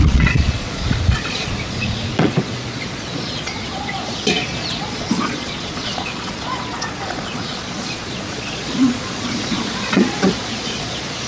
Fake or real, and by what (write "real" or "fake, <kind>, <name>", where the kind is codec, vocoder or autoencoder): fake, vocoder, Vocos